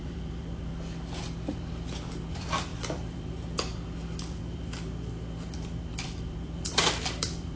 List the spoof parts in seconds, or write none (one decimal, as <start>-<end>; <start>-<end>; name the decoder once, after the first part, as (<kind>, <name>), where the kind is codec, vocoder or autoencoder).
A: 0.0-0.7 (vocoder, BigVGAN v2); 2.3-7.6